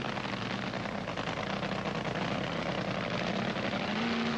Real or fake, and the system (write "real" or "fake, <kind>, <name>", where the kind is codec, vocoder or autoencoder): real